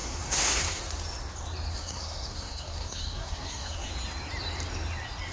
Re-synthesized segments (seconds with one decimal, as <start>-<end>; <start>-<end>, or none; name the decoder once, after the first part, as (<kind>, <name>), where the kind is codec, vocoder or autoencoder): 0.0-0.8 (codec, SNAC); 1.7-3.9